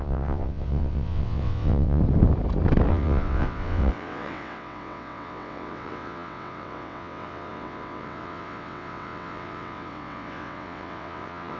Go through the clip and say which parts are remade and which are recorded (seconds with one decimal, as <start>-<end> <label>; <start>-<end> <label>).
0.0-2.0 remade; 2.0-2.9 recorded; 2.9-11.6 remade